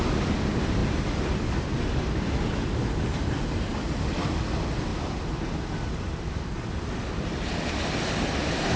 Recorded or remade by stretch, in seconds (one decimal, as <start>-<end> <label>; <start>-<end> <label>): 0.0-0.8 recorded; 0.8-1.7 remade; 1.7-8.8 recorded